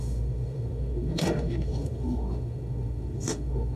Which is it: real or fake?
fake